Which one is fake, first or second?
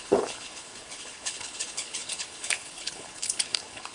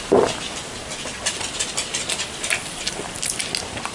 first